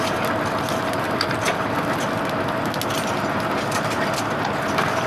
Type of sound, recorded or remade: recorded